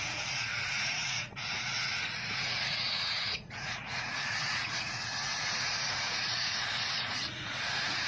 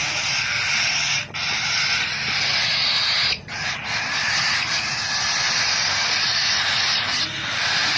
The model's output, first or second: first